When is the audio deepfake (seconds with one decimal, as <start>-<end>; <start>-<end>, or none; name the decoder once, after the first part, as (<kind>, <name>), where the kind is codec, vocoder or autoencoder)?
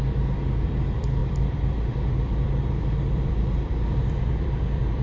0.0-5.0 (vocoder, BigVGAN v2)